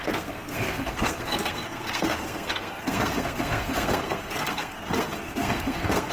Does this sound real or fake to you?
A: fake